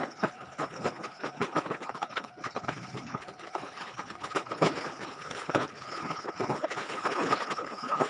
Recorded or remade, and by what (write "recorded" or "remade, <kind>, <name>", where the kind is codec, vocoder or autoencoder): remade, codec, HILCodec